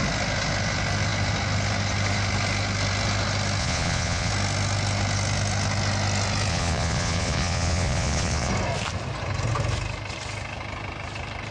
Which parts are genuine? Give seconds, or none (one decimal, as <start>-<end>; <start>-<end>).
0.0-3.6; 4.3-6.5; 8.5-11.5